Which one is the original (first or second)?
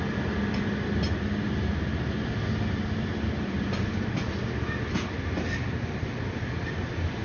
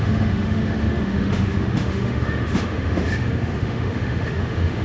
first